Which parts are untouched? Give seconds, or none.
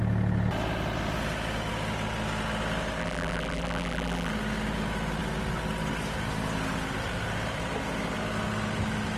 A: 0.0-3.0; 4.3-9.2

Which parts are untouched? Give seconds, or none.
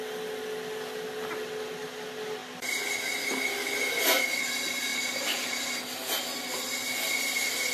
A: 0.0-7.7